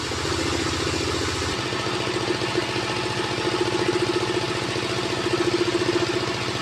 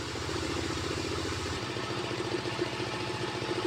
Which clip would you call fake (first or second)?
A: second